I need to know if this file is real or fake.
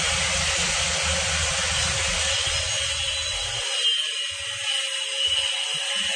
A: real